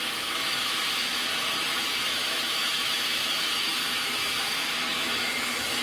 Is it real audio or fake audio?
fake